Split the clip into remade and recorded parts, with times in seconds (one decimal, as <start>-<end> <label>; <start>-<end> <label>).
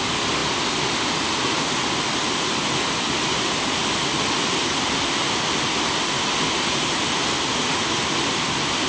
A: 0.0-0.4 recorded; 0.4-1.1 remade; 1.1-8.9 recorded